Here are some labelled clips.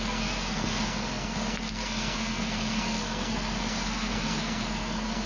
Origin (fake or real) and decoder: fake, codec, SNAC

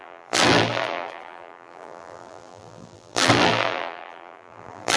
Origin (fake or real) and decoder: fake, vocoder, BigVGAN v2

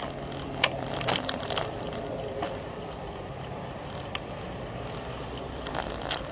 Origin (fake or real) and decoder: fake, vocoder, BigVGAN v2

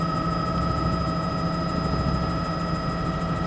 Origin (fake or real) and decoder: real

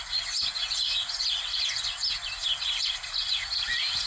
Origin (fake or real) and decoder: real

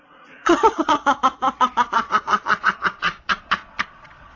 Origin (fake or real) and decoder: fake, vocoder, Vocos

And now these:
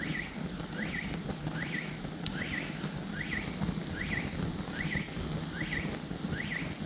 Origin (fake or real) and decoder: real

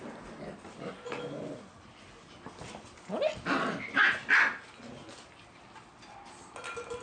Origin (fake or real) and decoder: real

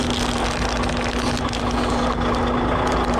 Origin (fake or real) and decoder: real